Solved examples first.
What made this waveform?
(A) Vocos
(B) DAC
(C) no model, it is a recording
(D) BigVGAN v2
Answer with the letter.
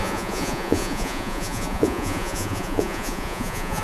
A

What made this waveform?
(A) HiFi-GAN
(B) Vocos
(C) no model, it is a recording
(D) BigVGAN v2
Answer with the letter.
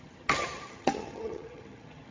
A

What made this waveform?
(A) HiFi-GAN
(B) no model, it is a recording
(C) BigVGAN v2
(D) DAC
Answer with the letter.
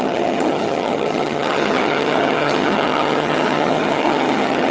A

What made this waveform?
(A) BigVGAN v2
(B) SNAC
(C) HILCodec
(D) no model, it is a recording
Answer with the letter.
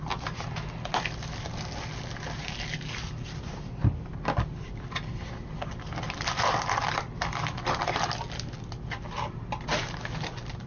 D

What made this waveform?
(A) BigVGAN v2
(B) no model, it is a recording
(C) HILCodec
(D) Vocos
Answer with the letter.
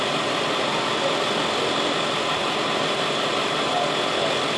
A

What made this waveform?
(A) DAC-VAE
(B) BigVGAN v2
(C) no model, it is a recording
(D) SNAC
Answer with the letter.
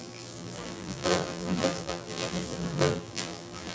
B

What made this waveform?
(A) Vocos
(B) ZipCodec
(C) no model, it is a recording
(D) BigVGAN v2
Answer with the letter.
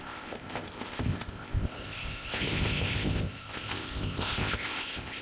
B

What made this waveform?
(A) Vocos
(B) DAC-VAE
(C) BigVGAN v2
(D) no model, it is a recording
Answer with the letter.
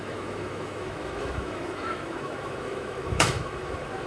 B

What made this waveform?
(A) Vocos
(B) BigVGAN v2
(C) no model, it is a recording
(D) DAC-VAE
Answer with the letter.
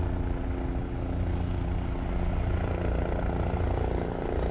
C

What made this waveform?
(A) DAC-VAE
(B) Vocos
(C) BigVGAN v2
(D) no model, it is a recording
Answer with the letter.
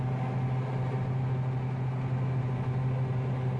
D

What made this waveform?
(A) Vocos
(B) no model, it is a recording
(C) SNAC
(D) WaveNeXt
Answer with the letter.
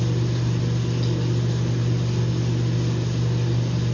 B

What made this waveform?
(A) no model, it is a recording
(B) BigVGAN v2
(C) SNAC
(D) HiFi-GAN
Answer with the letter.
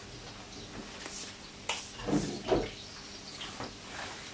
A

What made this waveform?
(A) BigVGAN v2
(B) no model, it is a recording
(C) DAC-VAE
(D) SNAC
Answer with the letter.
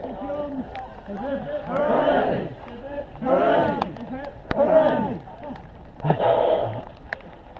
A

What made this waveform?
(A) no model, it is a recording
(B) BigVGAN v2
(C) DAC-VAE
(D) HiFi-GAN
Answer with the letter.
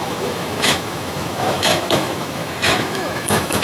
C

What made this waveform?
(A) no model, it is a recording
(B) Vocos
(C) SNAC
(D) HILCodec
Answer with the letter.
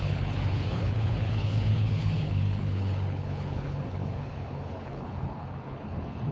D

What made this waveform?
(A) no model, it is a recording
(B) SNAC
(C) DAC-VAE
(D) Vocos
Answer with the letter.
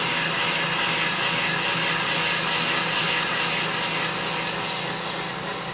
A